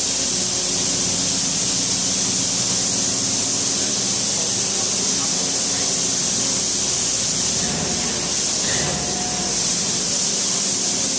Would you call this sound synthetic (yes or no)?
no